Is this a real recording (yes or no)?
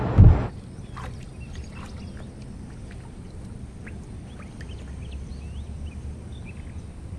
yes